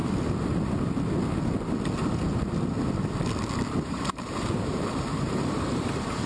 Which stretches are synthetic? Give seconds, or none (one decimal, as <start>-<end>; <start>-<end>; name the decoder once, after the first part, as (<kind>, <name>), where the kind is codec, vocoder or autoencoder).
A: 3.8-6.3 (vocoder, BigVGAN v2)